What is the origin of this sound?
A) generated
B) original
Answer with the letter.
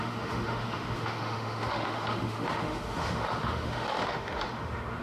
A